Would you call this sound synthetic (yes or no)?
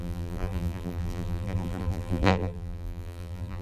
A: yes